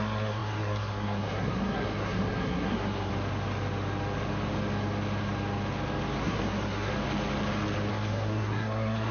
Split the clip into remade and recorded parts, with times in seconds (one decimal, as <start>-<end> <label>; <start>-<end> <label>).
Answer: 0.0-3.1 remade; 3.1-6.2 recorded; 6.2-6.9 remade; 6.9-7.9 recorded; 7.9-9.1 remade